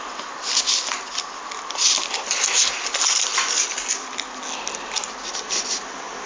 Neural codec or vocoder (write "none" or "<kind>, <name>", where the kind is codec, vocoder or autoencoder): none